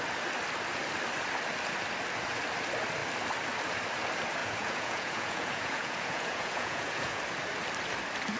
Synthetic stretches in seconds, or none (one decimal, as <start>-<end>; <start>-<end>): 4.4-7.2